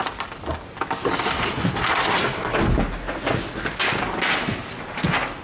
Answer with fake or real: real